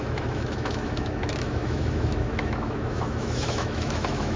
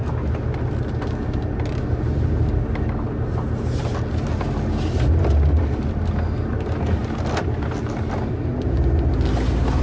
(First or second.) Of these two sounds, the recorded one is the second